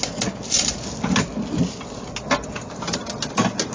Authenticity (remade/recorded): recorded